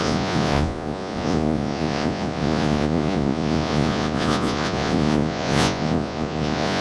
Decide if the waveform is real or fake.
fake